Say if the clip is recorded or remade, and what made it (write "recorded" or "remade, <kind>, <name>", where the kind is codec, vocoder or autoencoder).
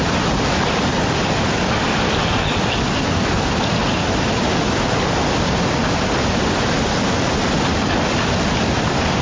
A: recorded